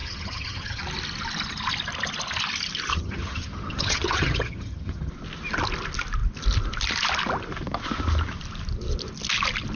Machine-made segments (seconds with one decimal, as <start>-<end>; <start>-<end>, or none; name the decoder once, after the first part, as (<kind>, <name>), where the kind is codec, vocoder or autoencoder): 0.0-0.8 (vocoder, HiFi-GAN); 2.9-5.1